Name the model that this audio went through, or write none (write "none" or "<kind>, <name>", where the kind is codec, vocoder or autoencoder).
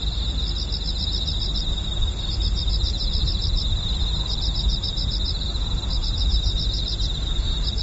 none